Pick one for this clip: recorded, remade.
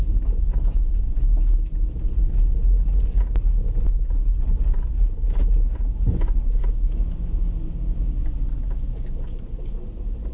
recorded